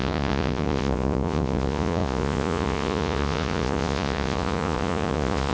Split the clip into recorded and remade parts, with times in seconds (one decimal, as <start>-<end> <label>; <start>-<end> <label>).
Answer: 0.0-5.5 remade